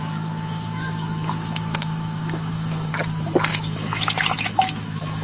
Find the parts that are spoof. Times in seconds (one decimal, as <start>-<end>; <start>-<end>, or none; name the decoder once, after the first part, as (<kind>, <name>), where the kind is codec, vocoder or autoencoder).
0.0-2.9 (autoencoder, DAC-VAE); 3.5-5.2